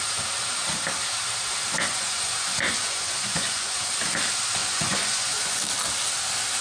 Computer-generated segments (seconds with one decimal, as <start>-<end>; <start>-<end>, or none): 1.9-3.9; 4.6-5.6